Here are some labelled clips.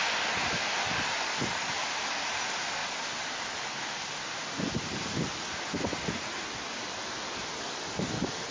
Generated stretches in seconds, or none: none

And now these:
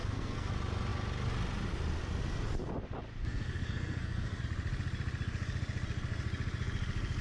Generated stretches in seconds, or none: 0.0-0.5; 3.2-4.4

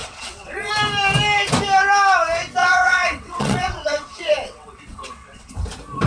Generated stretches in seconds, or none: 0.0-0.7; 2.6-5.5

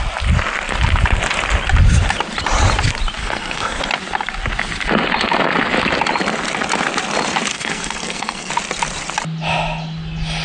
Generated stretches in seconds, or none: 3.2-3.8; 7.5-8.5

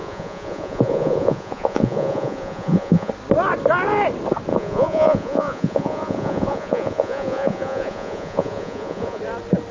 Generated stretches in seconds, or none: 0.0-3.1; 4.5-9.2